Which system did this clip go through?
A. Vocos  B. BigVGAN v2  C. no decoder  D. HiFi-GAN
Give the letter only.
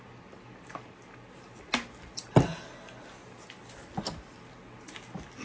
C